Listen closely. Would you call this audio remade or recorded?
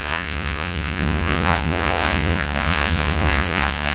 remade